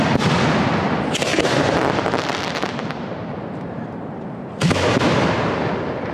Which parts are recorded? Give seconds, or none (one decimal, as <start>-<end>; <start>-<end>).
0.0-1.3; 5.0-6.1